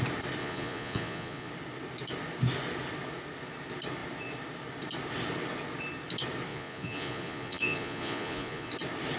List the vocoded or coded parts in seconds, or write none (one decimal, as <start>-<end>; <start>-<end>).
0.4-1.5; 6.5-8.7